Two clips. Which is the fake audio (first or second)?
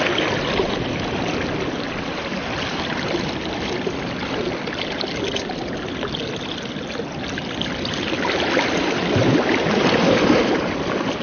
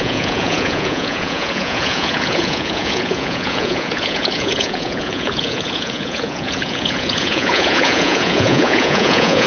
second